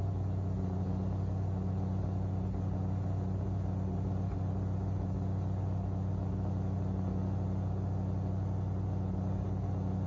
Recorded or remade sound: recorded